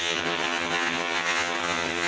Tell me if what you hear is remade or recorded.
remade